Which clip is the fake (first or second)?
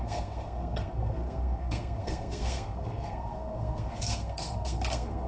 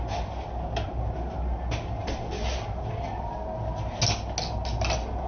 first